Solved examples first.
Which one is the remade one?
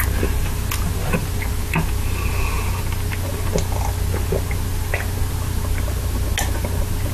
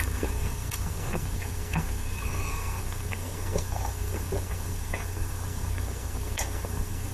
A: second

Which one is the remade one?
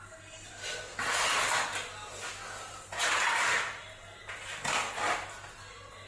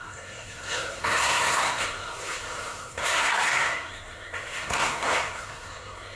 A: second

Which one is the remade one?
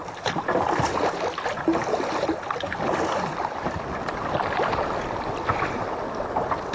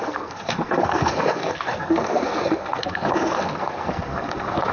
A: second